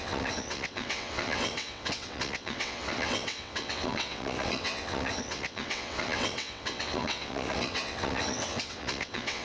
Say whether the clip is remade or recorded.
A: remade